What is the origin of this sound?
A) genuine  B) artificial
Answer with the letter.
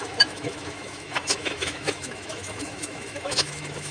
B